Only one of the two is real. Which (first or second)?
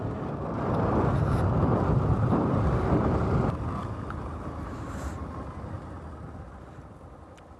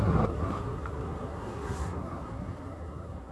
first